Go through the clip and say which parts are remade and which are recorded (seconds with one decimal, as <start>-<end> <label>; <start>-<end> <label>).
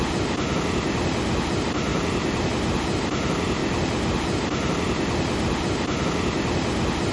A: 0.0-1.9 recorded; 1.9-2.5 remade; 2.5-7.1 recorded